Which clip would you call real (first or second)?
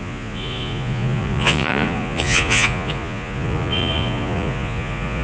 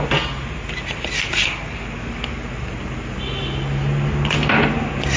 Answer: second